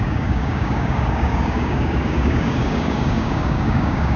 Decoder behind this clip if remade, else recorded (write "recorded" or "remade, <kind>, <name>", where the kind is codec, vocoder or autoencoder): remade, codec, DAC